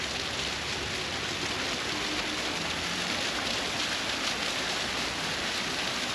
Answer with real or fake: real